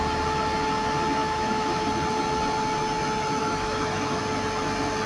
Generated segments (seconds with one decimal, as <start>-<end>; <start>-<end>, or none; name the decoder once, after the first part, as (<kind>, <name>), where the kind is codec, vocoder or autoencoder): 1.2-1.9 (autoencoder, DAC-VAE); 3.4-4.2